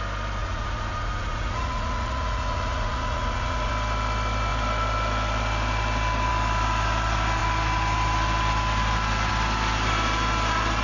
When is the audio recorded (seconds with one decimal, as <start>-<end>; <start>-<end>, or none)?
0.0-0.4; 3.7-10.8